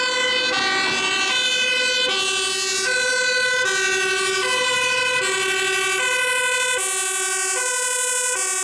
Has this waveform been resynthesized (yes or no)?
no